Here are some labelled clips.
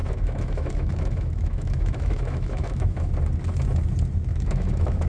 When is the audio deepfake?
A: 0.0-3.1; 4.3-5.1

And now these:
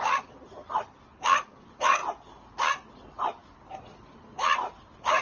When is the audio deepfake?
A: none

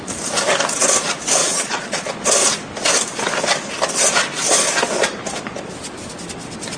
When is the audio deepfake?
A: 1.4-2.1

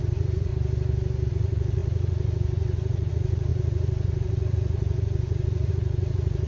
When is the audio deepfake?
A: 0.0-0.5; 1.3-6.5

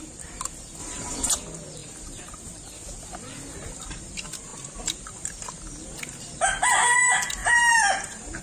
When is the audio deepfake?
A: 0.8-1.3; 1.8-2.4; 7.4-8.4

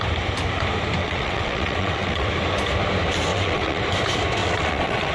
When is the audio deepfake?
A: 1.0-2.3; 3.3-3.8; 4.4-5.1

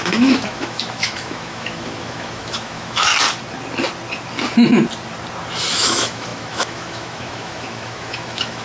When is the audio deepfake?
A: 0.0-3.1; 5.7-8.6

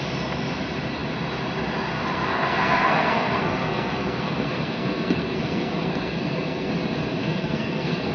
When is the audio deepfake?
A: 1.9-6.7; 7.2-8.1